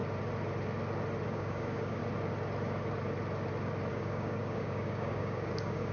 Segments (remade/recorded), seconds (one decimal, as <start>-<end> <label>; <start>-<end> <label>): 0.0-1.3 recorded; 1.3-2.0 remade; 2.0-3.9 recorded; 3.9-5.9 remade